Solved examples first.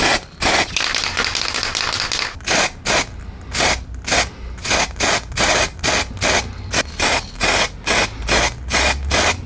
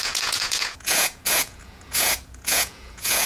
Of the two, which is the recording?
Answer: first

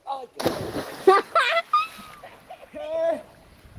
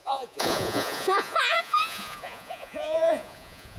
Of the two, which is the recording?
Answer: first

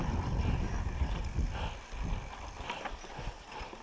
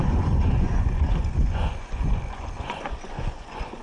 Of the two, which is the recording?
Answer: first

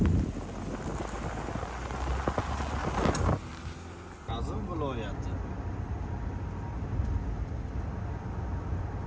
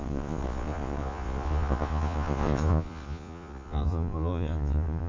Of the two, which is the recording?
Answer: first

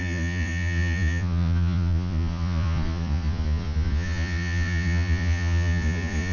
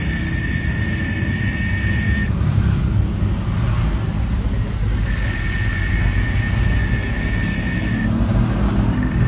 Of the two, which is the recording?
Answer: second